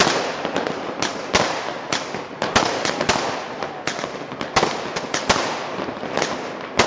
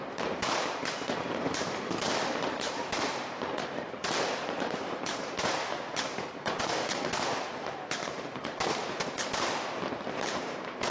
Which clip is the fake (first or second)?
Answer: second